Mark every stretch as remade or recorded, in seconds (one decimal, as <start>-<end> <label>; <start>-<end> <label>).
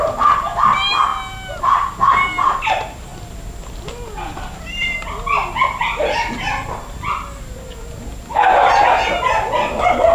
0.0-10.1 recorded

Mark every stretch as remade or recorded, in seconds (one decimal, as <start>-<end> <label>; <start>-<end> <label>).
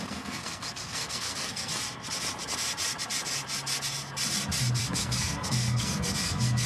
0.0-1.7 remade; 1.7-4.8 recorded; 4.8-6.7 remade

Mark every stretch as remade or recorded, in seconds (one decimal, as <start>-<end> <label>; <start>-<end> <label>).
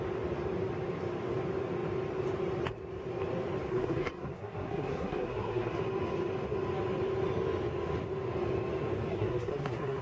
0.0-3.7 recorded; 3.7-5.7 remade; 5.7-9.1 recorded; 9.1-10.0 remade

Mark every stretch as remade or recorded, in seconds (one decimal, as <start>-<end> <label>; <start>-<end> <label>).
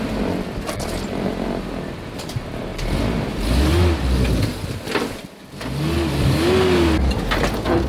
0.0-7.9 recorded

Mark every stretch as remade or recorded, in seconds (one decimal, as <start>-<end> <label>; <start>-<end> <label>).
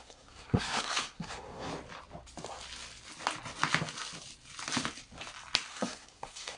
0.0-1.7 remade; 1.7-5.7 recorded; 5.7-6.6 remade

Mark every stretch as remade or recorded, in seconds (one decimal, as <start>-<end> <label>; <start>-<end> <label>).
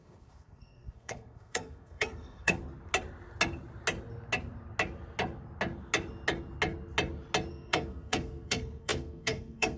0.0-2.6 remade; 2.6-7.5 recorded; 7.5-9.8 remade